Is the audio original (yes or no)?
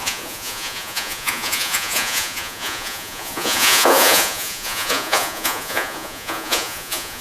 no